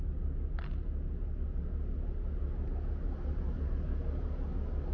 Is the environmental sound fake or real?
real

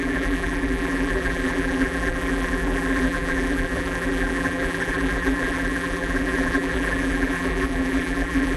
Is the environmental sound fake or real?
fake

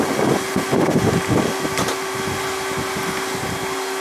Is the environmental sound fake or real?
real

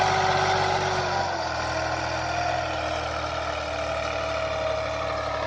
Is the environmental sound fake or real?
real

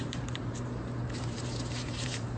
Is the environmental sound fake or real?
fake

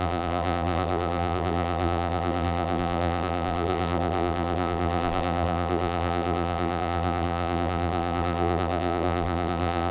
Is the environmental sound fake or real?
fake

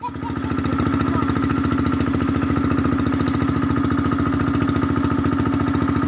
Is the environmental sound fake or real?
real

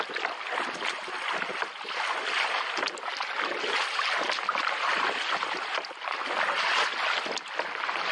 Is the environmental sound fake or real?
real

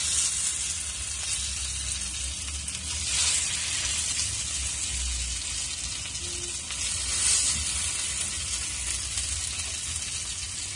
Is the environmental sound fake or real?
real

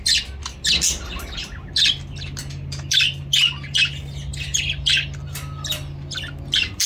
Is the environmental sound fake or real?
real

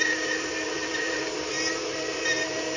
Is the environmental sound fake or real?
fake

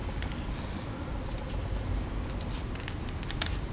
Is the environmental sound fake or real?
real